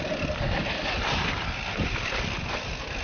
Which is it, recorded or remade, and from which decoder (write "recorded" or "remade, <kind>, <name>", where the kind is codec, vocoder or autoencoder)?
recorded